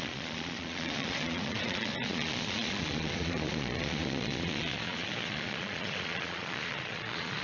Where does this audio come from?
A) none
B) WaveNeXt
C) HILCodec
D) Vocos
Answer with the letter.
D